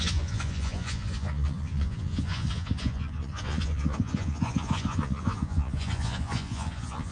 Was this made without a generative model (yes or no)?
no